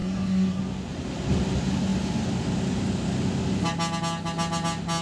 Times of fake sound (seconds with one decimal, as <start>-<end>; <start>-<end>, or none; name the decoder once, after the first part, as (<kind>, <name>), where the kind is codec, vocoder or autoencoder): 0.0-0.6 (codec, SNAC)